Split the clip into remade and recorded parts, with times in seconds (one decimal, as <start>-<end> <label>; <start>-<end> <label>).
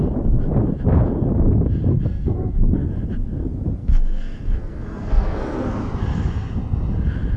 0.0-1.9 recorded; 1.9-2.9 remade; 2.9-3.8 recorded; 3.8-5.8 remade; 5.8-7.4 recorded